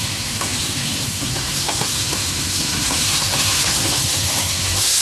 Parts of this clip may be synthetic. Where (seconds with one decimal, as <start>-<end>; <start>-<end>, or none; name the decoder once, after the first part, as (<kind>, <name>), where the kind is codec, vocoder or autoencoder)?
0.0-5.0 (codec, SNAC)